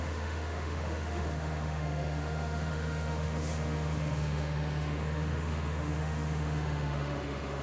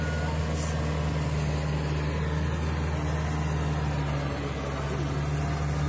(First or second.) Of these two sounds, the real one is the second